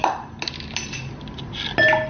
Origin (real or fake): real